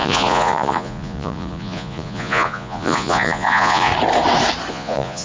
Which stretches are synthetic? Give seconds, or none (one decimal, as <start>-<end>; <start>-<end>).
0.0-3.9; 4.7-5.2